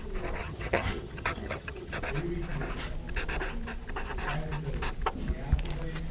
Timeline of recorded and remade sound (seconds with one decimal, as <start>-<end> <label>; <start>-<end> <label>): 0.0-0.4 recorded; 0.4-2.0 remade; 2.0-6.1 recorded